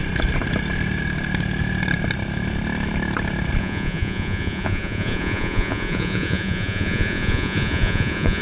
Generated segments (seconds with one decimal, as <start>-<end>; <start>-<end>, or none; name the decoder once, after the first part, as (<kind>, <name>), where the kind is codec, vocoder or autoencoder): 3.6-8.4 (vocoder, Vocos)